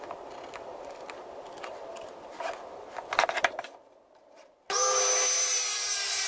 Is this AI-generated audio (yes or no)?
no